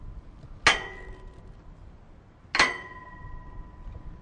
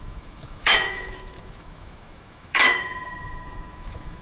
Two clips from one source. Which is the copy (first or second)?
second